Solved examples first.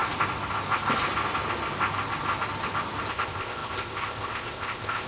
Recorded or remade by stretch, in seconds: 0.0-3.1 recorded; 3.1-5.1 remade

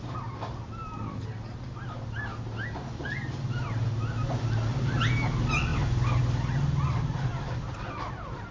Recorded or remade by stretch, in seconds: 0.0-8.5 recorded

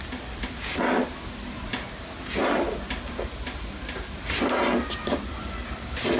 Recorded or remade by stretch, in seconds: 0.0-6.2 recorded

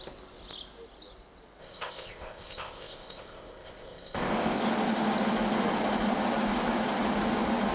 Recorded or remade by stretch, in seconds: 0.0-1.6 recorded; 1.6-4.6 remade; 4.6-7.7 recorded

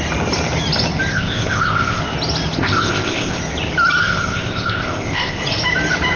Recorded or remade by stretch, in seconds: 0.0-1.1 recorded; 1.1-2.0 remade; 2.0-2.6 recorded; 2.6-3.4 remade; 3.4-4.0 recorded; 4.0-5.4 remade; 5.4-6.2 recorded

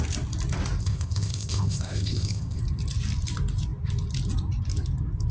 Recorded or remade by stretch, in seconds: 0.0-0.8 recorded; 0.8-2.6 remade; 2.6-5.3 recorded

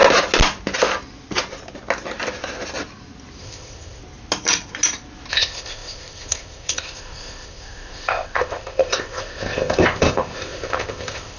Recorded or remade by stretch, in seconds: 0.0-3.4 recorded; 3.4-4.0 remade; 4.0-5.3 recorded; 5.3-11.4 remade